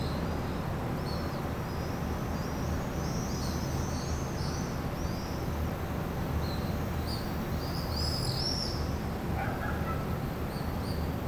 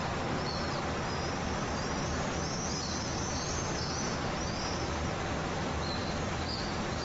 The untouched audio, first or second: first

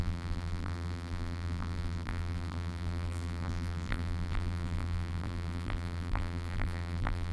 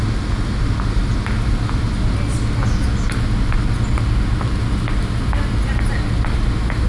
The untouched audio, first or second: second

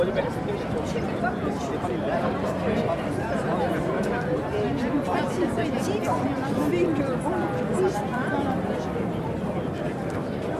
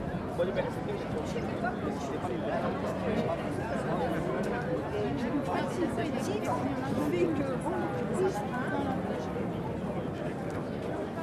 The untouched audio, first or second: second